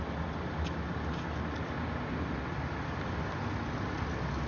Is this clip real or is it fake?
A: real